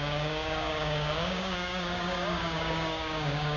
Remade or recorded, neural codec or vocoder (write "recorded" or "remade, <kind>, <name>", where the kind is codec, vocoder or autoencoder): remade, codec, DAC